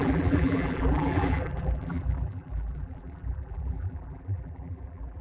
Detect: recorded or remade remade